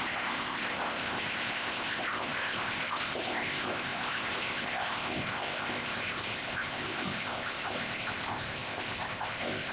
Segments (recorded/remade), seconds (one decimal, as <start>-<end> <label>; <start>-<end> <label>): 0.0-9.7 remade